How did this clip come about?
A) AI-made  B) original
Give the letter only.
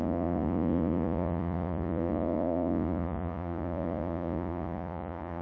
A